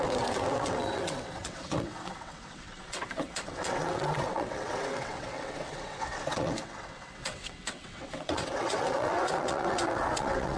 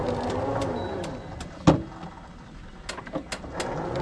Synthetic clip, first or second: first